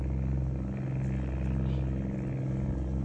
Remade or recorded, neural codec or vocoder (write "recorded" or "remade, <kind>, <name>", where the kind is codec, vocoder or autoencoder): recorded